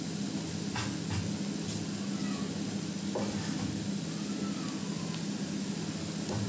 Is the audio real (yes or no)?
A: yes